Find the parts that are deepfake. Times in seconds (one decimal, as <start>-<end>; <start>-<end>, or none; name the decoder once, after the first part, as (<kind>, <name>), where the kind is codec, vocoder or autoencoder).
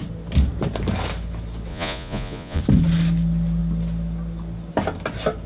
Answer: 1.7-2.6 (vocoder, Vocos)